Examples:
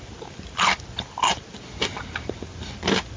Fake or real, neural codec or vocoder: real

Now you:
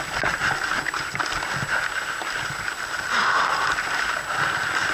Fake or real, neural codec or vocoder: real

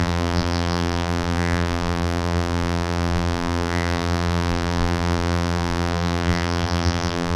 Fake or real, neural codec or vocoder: fake, vocoder, BigVGAN v2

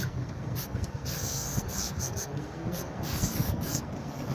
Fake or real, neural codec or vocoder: fake, codec, SNAC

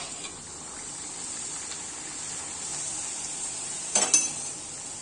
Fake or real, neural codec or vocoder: real